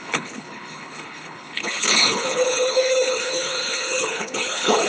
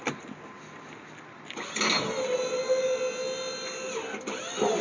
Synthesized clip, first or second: first